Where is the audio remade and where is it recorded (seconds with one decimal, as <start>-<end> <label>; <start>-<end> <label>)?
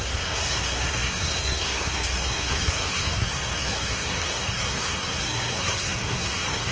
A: 0.0-6.7 remade